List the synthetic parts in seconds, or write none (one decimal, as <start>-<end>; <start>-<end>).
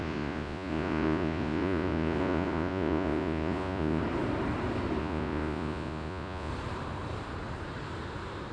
0.0-4.0; 5.0-6.5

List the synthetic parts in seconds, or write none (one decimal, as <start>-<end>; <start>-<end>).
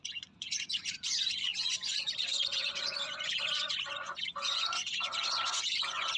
0.0-6.2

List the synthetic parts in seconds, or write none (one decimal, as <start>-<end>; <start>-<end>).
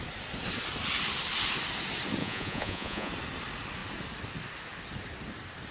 2.2-3.1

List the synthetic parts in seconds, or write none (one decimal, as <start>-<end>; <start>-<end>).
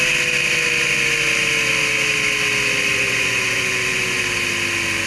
2.9-4.2